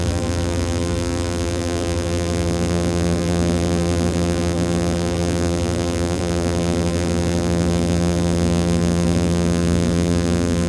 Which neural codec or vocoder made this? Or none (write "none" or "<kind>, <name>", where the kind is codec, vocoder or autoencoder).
vocoder, BigVGAN v2